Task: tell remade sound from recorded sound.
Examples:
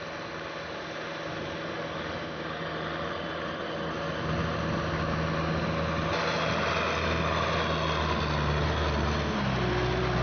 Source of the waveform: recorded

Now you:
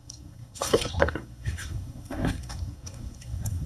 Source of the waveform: remade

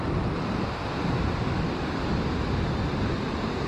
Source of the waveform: recorded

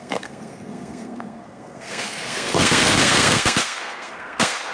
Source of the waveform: remade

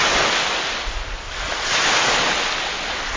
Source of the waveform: recorded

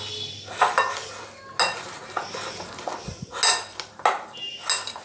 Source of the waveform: recorded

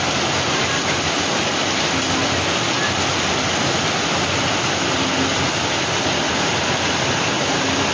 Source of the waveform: recorded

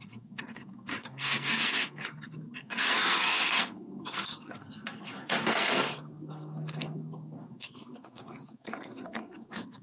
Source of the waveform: remade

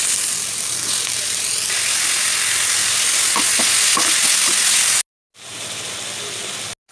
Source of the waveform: recorded